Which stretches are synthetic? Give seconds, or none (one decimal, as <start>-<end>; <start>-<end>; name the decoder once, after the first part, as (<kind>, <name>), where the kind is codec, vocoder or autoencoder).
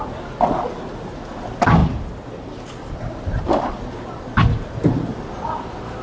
none